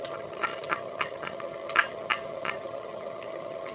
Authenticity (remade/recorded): remade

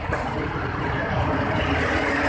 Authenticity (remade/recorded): recorded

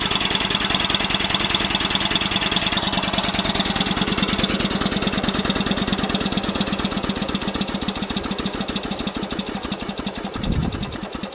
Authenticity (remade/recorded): recorded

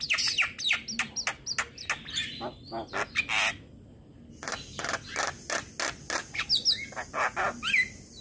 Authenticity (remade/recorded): recorded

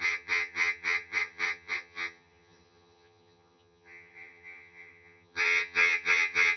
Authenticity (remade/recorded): remade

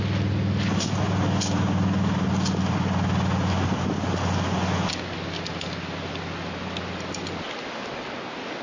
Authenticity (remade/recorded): recorded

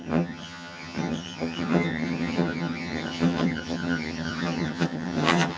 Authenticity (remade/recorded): remade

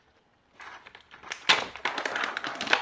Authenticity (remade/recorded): recorded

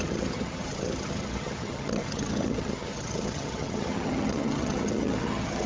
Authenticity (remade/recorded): remade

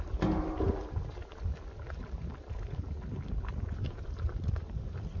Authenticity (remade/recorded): recorded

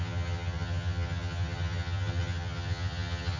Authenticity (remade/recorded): remade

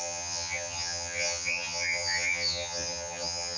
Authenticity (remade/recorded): remade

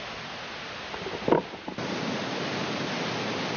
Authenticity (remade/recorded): recorded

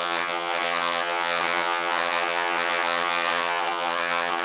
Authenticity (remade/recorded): remade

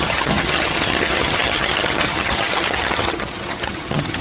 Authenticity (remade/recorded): remade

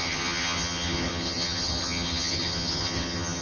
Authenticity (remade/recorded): remade